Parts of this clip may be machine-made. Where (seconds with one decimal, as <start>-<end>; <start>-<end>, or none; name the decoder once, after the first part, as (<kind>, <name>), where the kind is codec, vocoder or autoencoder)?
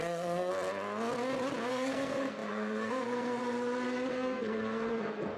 0.0-0.5 (codec, SNAC); 1.7-3.4; 4.1-5.4